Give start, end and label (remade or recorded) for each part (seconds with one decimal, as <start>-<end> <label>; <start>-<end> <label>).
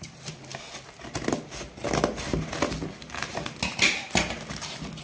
0.0-5.0 recorded